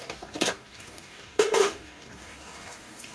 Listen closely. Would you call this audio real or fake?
fake